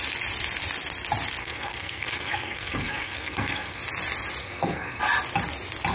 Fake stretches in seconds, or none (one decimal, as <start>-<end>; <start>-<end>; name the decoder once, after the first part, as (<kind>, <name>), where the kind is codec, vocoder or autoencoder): 1.4-3.8 (codec, SNAC); 4.4-5.0